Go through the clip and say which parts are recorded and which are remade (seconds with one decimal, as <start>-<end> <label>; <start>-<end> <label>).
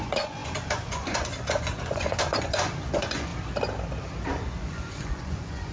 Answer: 0.0-3.3 remade; 3.3-4.3 recorded; 4.3-5.7 remade